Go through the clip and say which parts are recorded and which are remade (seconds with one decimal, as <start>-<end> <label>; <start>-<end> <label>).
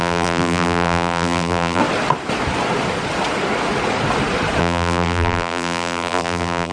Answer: 0.0-1.8 remade; 1.8-4.6 recorded; 4.6-6.7 remade